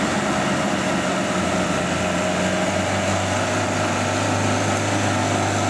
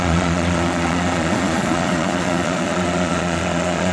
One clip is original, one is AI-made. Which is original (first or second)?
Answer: first